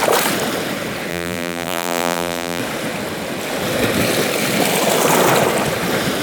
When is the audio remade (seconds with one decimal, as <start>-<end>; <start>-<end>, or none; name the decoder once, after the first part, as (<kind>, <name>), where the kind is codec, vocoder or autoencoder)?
1.1-2.6 (vocoder, BigVGAN v2)